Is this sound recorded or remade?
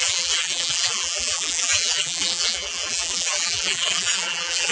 remade